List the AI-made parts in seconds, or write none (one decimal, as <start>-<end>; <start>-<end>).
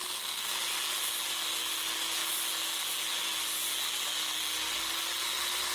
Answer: 0.0-0.5